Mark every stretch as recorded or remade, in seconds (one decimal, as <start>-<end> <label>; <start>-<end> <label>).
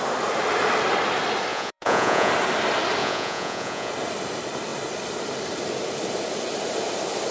0.0-1.5 recorded; 1.5-2.3 remade; 2.3-3.0 recorded; 3.0-3.9 remade; 3.9-7.3 recorded